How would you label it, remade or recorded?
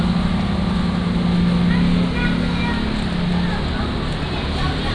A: recorded